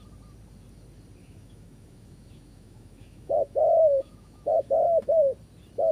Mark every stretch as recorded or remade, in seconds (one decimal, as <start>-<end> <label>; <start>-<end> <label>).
0.0-1.2 recorded; 1.2-4.7 remade; 4.7-5.9 recorded